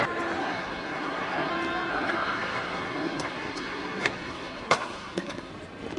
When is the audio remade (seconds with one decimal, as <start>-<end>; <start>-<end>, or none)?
0.4-1.5; 1.9-5.5